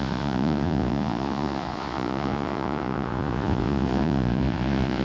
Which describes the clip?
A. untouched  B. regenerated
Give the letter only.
B